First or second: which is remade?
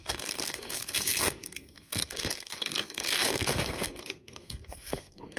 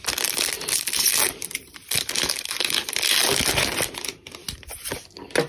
first